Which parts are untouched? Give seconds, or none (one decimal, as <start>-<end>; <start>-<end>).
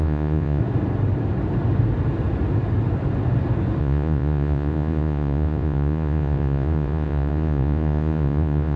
0.6-3.8